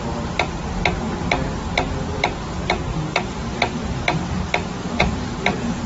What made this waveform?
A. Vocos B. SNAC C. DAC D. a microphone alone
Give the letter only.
D